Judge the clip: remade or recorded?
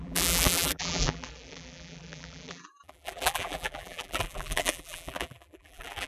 remade